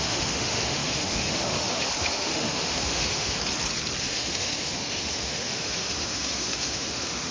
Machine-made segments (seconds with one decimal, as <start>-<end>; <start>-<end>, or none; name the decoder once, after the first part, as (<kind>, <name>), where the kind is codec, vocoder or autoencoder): 0.0-3.4 (autoencoder, DAC-VAE); 4.0-7.3